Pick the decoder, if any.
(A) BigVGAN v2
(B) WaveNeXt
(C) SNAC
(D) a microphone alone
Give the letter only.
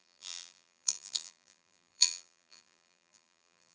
A